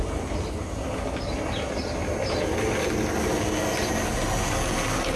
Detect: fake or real real